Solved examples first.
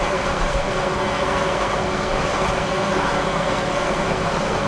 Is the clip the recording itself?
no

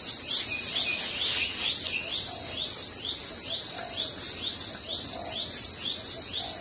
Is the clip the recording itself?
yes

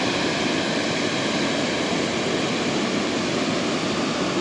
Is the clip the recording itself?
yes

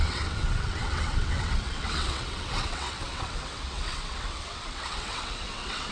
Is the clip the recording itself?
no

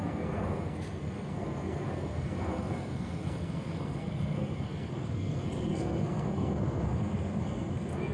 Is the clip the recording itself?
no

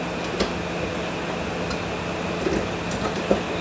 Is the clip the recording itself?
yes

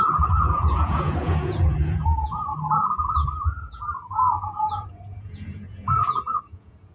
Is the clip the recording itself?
no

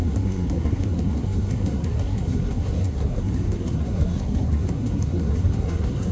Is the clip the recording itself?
no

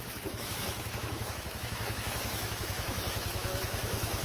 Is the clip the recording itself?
no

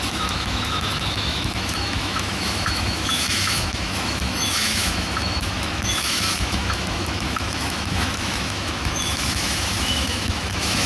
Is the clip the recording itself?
no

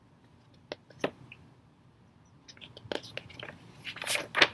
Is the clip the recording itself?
yes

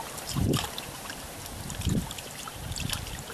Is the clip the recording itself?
no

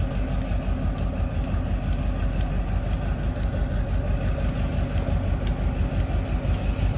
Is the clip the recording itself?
yes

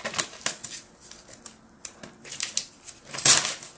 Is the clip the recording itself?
yes